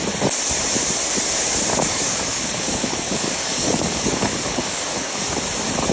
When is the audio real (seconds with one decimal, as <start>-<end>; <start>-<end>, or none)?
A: 0.0-1.7; 5.2-5.9